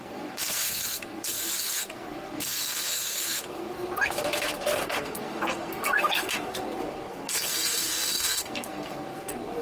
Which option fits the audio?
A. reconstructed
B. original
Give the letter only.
A